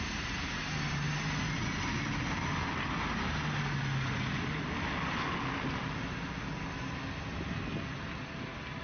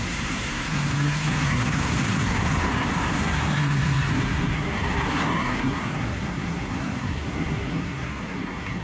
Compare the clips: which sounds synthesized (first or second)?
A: second